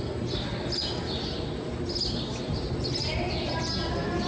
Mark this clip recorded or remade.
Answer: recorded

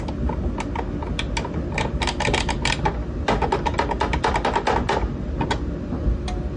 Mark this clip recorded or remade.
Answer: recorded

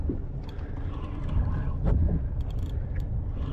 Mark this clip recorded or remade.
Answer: remade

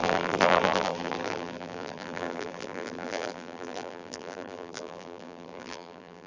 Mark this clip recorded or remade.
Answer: remade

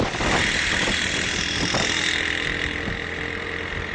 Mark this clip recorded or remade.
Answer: recorded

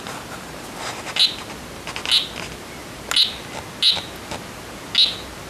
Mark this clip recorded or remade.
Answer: recorded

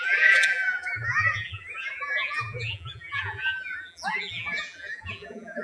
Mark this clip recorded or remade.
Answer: remade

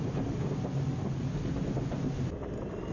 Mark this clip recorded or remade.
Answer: recorded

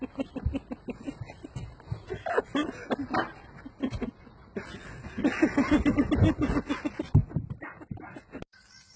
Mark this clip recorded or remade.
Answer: recorded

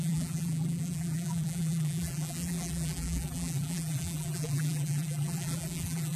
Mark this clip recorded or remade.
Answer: remade